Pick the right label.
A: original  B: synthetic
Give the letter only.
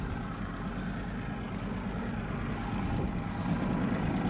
A